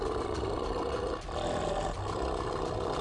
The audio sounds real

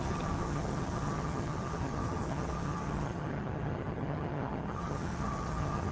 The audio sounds fake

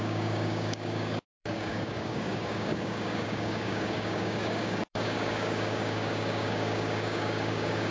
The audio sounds fake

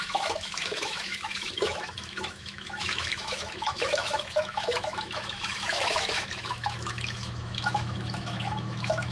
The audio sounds fake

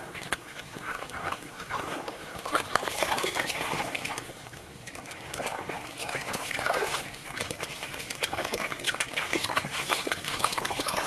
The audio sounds fake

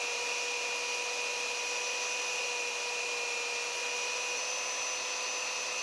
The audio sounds real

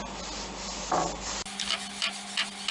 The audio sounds real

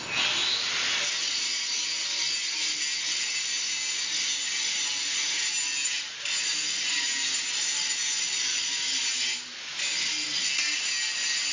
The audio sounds real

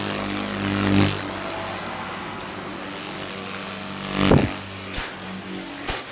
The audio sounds real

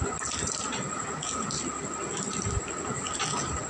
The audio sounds real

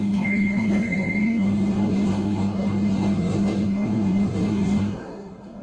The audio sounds fake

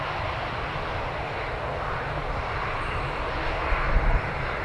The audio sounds real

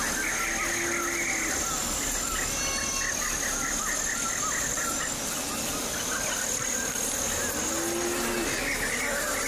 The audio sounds real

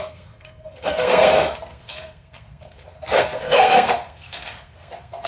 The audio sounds fake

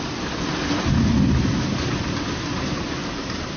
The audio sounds real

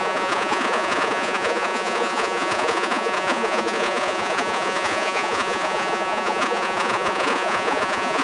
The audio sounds fake